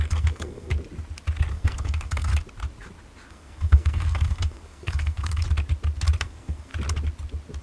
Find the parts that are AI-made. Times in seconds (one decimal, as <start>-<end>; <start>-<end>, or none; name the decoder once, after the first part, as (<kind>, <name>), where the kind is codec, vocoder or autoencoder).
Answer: 0.0-0.7 (codec, SNAC); 1.5-2.3; 3.3-5.4; 6.2-6.7